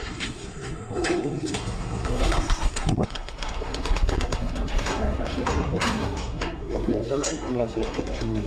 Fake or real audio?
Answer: fake